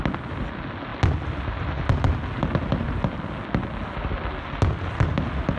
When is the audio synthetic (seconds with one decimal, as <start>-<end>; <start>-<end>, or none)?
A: none